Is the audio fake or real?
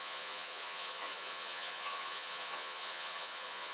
fake